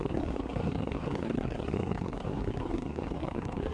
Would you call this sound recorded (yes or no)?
no